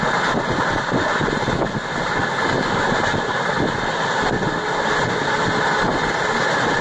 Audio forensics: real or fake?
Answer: real